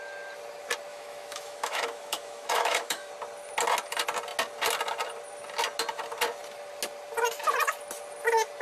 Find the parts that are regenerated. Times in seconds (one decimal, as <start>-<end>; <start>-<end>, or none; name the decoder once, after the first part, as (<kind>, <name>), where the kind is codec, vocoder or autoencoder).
0.9-3.1 (autoencoder, DAC-VAE)